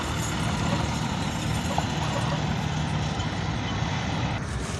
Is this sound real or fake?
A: real